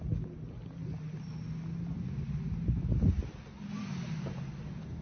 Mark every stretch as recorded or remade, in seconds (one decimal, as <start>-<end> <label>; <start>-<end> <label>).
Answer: 0.0-5.0 recorded